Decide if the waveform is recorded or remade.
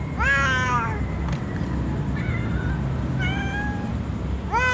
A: recorded